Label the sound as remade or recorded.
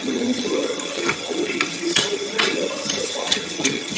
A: remade